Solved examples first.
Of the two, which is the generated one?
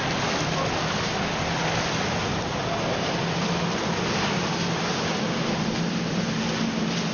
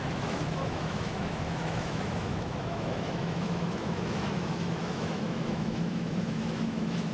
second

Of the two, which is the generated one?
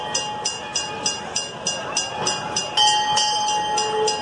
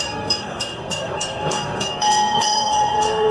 second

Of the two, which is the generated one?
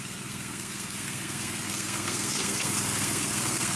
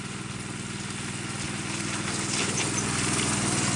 first